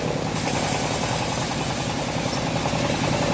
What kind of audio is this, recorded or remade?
recorded